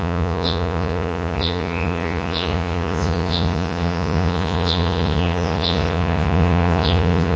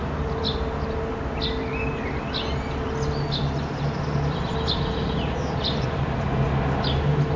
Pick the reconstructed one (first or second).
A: first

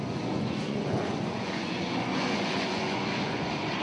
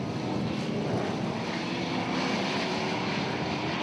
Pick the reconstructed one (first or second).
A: first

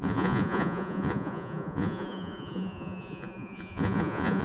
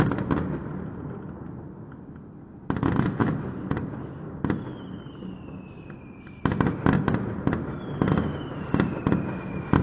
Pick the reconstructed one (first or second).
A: first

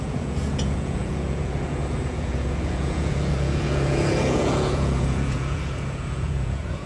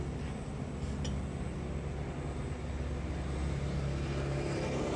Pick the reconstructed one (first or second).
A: first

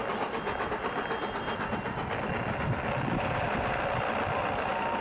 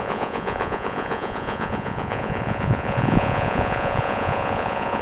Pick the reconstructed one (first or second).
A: second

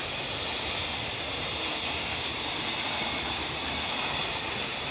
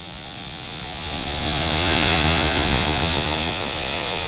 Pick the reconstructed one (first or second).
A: second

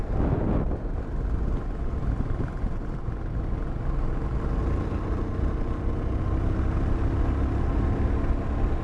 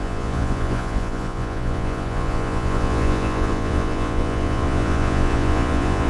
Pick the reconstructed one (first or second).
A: second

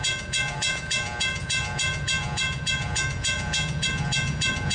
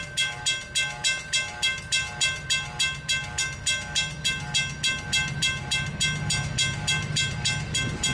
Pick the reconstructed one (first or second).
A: first